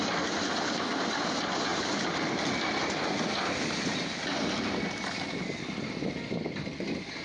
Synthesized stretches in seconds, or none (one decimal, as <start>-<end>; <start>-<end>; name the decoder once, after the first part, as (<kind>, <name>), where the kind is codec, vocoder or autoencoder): none